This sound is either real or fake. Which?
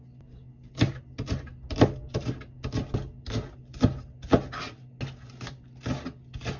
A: real